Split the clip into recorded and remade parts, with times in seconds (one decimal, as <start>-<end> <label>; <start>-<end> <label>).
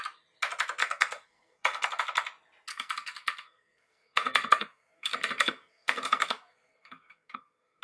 0.0-0.8 recorded; 0.8-2.0 remade; 2.0-2.7 recorded; 2.7-7.8 remade